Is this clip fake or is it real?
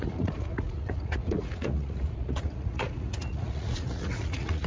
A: fake